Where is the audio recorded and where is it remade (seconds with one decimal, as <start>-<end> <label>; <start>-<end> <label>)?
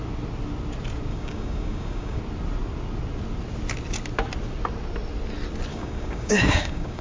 0.0-1.1 recorded; 1.1-2.2 remade; 2.2-5.7 recorded; 5.7-7.0 remade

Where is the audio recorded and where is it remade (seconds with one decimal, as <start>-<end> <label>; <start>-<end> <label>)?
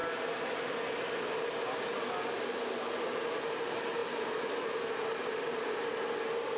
0.0-6.6 recorded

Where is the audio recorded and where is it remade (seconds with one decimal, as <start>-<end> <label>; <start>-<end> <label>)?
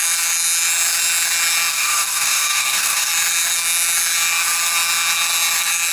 0.0-1.7 recorded; 1.7-3.1 remade; 3.1-5.9 recorded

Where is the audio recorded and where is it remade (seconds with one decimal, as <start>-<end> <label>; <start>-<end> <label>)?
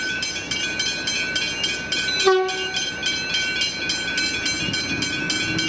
0.0-5.7 recorded